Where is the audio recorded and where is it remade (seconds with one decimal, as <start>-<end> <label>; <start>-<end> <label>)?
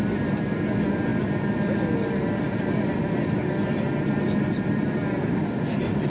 0.0-6.1 recorded